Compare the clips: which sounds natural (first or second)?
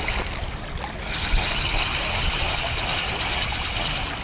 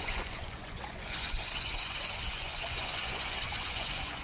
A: first